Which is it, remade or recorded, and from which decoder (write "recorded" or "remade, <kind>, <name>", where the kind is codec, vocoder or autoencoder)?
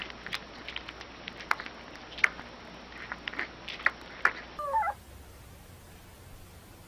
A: recorded